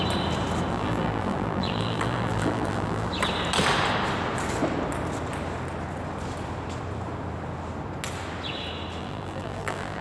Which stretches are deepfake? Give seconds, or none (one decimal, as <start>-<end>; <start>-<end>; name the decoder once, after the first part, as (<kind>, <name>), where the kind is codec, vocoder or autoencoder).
0.7-3.1 (vocoder, BigVGAN v2); 9.0-10.0